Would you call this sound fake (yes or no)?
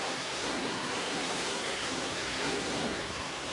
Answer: yes